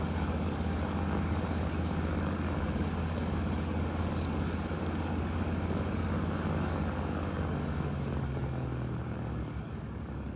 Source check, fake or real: fake